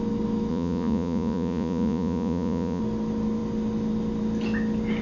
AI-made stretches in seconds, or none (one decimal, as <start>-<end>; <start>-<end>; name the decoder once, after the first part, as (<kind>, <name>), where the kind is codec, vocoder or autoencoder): 0.5-2.8 (vocoder, Vocos)

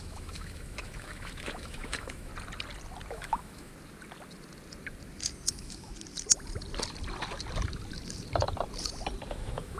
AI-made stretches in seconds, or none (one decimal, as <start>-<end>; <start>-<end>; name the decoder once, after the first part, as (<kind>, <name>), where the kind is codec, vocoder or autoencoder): 0.0-2.3 (autoencoder, DAC-VAE); 3.1-3.7; 5.5-5.9; 9.3-9.8